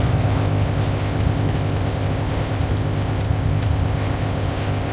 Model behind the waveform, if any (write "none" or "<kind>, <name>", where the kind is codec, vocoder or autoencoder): codec, ZipCodec